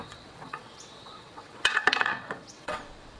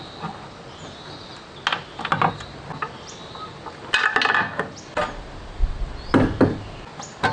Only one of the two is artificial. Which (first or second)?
first